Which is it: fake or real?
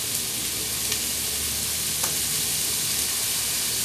real